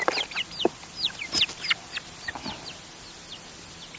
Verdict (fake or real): real